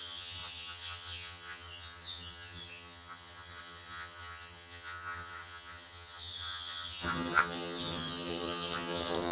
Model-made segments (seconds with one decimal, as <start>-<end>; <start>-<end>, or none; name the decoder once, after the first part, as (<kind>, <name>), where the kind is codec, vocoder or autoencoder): 0.0-9.3 (vocoder, HiFi-GAN)